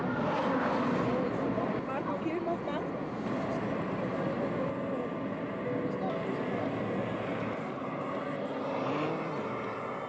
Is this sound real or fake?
real